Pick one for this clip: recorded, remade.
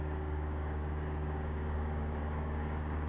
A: remade